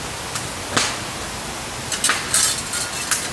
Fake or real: real